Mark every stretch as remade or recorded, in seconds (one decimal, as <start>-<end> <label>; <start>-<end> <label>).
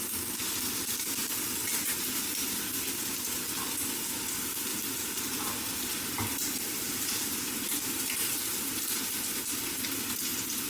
0.0-1.6 recorded; 1.6-2.2 remade; 2.2-4.7 recorded; 4.7-5.5 remade; 5.5-6.3 recorded; 6.3-8.9 remade; 8.9-10.7 recorded